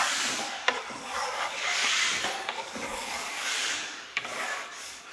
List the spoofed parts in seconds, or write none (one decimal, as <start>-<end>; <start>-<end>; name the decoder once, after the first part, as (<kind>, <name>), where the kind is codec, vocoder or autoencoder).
0.0-1.8 (codec, DAC); 2.4-5.1

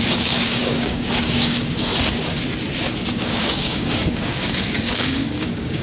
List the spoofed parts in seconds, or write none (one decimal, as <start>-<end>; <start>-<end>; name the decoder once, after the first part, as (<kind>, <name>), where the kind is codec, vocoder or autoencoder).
0.0-1.9 (codec, DAC); 3.1-5.8

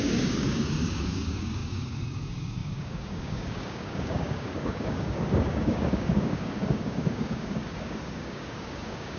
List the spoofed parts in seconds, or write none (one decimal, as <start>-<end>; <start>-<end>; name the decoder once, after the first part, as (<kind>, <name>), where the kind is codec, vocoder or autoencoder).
0.0-9.2 (codec, DAC)

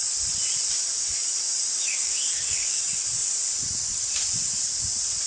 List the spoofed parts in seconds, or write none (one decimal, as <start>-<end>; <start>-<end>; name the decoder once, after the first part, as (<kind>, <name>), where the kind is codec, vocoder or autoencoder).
1.7-2.8 (codec, DAC)

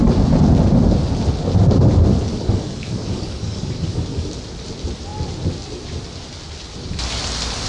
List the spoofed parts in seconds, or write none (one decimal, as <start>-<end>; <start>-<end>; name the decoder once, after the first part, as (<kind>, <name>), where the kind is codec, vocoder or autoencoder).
2.3-4.3 (codec, DAC)

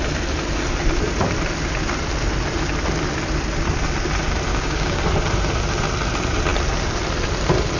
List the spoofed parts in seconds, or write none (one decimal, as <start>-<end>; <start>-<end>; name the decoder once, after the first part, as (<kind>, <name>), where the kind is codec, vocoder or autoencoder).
4.5-5.0 (codec, DAC)

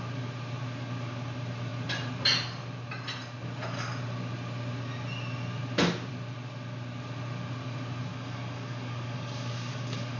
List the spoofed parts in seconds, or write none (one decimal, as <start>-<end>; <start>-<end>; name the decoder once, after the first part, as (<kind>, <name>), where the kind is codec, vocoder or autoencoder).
8.1-10.2 (codec, DAC)